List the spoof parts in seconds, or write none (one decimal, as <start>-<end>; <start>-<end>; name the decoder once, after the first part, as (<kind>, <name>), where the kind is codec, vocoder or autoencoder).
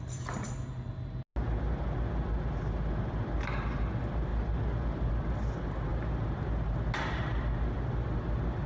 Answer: 5.9-6.8 (vocoder, BigVGAN v2)